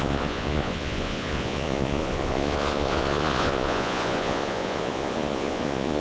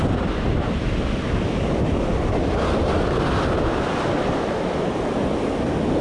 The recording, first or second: second